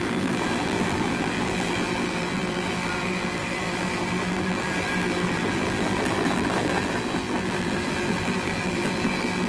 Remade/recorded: remade